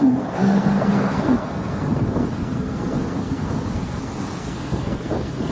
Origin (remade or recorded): remade